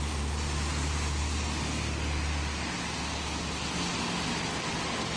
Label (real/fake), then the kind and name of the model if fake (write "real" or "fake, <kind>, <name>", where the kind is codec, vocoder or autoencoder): real